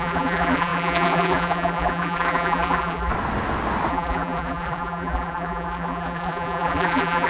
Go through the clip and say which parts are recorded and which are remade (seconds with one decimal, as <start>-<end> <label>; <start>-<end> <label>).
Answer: 0.0-3.1 remade; 3.1-3.9 recorded; 3.9-7.3 remade